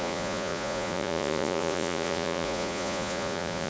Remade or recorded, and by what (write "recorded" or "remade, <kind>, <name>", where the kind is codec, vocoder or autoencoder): remade, vocoder, Vocos